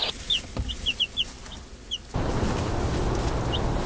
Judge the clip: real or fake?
real